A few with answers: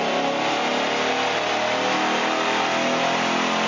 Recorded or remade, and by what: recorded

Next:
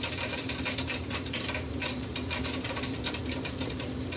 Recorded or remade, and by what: remade, vocoder, BigVGAN v2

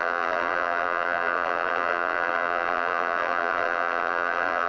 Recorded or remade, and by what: remade, vocoder, BigVGAN v2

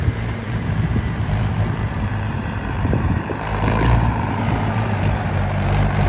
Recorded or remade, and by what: remade, vocoder, BigVGAN v2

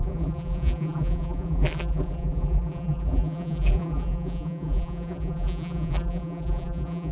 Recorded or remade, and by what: remade, vocoder, BigVGAN v2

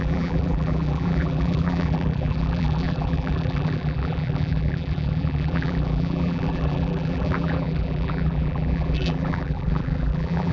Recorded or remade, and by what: remade, vocoder, BigVGAN v2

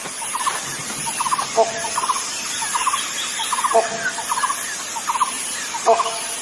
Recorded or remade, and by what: recorded